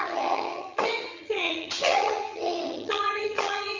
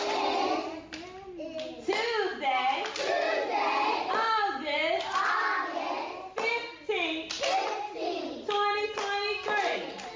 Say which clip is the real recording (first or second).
second